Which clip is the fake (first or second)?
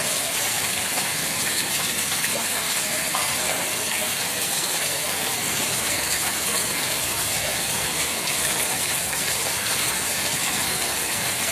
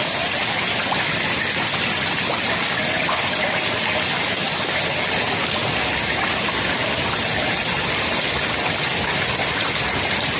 first